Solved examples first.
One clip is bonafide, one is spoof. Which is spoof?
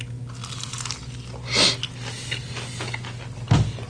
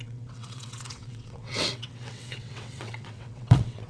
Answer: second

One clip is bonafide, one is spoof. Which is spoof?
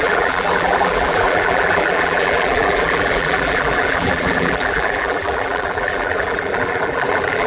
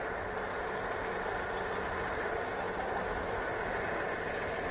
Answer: first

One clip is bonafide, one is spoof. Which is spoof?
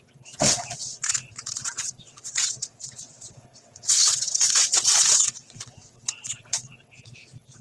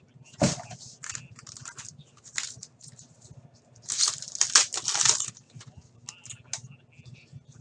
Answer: first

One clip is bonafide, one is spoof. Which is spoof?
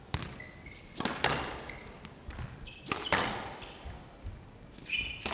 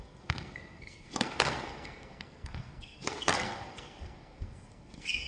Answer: second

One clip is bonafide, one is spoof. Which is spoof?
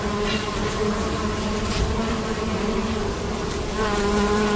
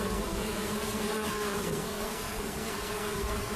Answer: second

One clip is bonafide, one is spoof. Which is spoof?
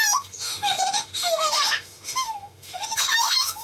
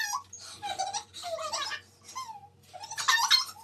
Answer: first